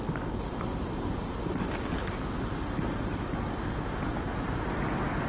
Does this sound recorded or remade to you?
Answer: recorded